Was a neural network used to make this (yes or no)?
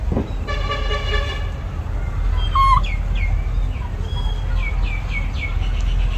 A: no